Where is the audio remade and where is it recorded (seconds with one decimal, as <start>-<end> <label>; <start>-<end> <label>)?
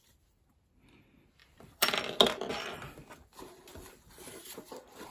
0.0-1.4 recorded; 1.4-2.0 remade; 2.0-2.5 recorded; 2.5-5.1 remade